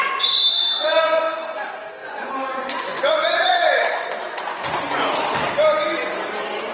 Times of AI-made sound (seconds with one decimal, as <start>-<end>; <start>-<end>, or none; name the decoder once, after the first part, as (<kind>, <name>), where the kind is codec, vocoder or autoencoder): 2.0-5.1 (vocoder, Vocos)